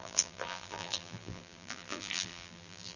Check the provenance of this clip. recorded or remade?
remade